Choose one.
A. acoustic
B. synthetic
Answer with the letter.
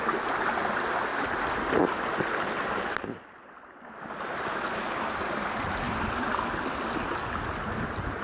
A